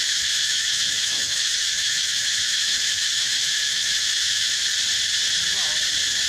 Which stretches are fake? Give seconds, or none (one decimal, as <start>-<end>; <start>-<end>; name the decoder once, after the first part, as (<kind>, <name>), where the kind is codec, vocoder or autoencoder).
0.0-4.6 (autoencoder, DAC-VAE)